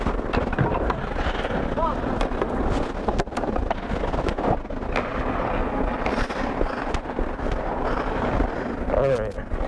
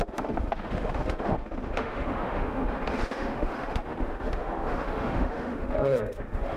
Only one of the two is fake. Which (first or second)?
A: second